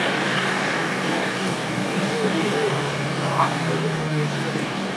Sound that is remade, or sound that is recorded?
remade